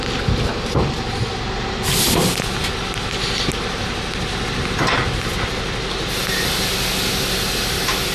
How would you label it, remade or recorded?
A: recorded